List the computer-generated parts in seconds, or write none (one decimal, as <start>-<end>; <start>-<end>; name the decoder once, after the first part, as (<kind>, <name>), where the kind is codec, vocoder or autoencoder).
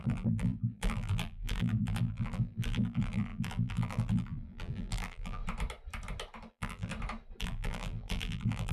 0.0-5.4 (vocoder, BigVGAN v2); 6.5-6.9; 7.4-8.7